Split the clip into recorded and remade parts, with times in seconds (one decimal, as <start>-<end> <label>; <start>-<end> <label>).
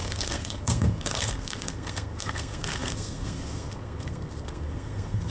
0.0-5.3 remade